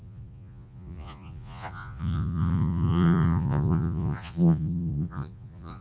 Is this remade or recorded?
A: remade